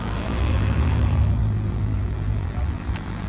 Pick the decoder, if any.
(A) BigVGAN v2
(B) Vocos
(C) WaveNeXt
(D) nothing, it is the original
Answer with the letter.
A